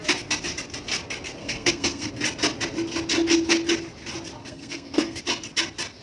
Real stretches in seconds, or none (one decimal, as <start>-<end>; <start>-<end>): 0.0-1.4; 2.1-4.4; 5.2-6.0